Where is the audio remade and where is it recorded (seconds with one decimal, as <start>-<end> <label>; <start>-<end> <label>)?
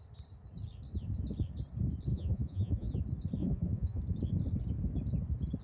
0.0-2.1 recorded; 2.1-2.9 remade; 2.9-3.4 recorded; 3.4-4.0 remade; 4.0-5.6 recorded